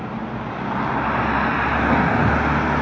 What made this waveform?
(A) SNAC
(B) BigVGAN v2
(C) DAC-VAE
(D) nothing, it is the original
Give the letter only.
D